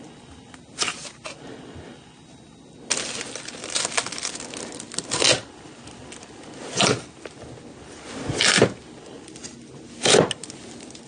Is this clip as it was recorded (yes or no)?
yes